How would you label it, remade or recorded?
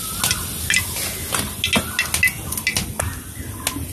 recorded